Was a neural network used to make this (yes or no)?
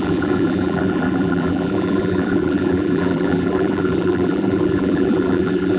yes